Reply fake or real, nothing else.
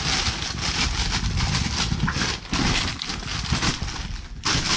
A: real